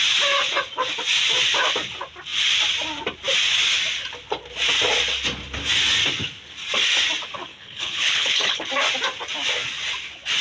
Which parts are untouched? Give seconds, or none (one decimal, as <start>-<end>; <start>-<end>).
0.0-7.5; 8.7-10.4